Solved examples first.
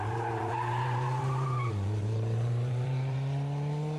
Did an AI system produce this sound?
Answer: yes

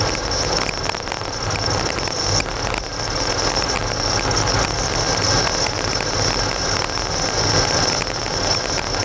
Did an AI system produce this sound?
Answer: no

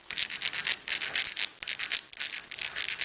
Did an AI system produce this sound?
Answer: no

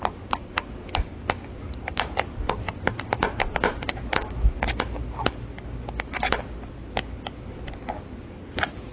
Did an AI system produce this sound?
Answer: no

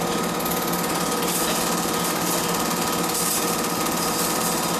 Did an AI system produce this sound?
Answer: no